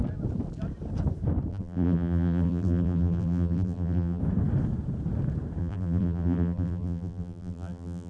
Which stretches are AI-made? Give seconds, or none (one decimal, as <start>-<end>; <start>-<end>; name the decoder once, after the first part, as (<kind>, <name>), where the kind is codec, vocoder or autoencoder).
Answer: 1.5-4.2 (vocoder, BigVGAN v2); 5.6-8.1